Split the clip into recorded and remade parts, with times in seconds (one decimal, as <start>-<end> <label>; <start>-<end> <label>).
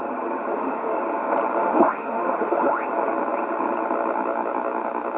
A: 0.0-0.5 recorded; 0.5-1.0 remade; 1.0-1.6 recorded; 1.6-2.7 remade; 2.7-5.2 recorded